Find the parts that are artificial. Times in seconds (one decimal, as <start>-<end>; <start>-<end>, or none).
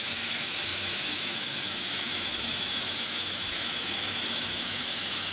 0.0-5.3